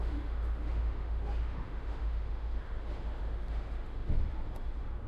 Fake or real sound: fake